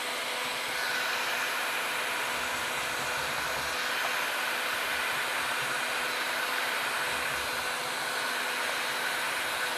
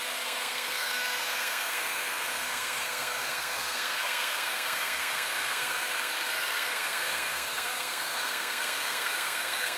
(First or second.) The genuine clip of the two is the first